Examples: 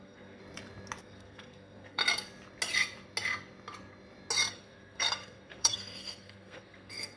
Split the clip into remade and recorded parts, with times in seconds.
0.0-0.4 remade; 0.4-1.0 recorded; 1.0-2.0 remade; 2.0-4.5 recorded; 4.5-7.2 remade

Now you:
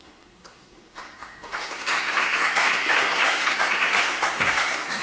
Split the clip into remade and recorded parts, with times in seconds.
0.0-5.0 remade

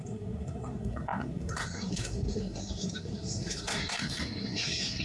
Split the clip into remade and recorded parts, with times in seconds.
0.0-5.0 remade

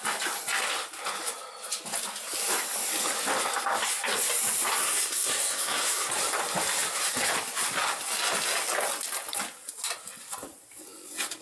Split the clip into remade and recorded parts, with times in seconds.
0.0-4.8 recorded; 4.8-6.1 remade; 6.1-11.4 recorded

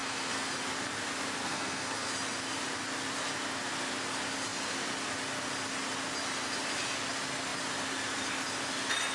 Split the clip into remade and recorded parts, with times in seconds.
0.0-0.5 remade; 0.5-1.4 recorded; 1.4-2.1 remade; 2.1-9.1 recorded